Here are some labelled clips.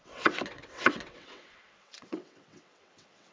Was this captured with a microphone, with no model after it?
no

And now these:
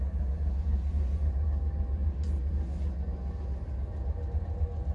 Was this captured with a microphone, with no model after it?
yes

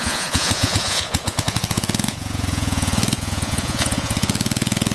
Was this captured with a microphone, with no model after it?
no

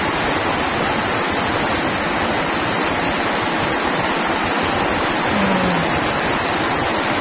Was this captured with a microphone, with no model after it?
yes